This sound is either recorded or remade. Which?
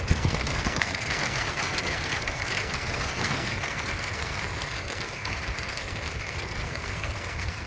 remade